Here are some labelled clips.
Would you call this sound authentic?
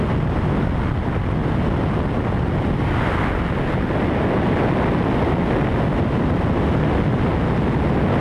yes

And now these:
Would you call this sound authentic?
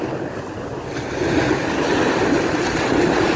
yes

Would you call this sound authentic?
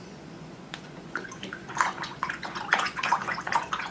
no